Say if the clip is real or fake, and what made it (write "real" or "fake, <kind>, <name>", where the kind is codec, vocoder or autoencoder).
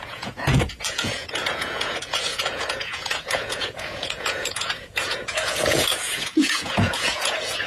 fake, vocoder, Vocos